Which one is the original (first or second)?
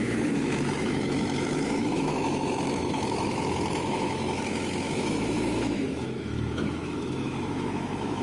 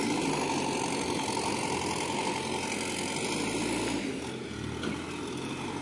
second